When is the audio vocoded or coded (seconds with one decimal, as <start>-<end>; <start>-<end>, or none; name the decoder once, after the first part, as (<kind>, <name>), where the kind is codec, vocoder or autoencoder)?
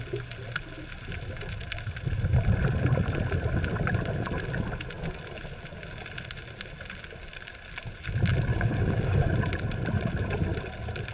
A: 8.5-9.3 (codec, DAC)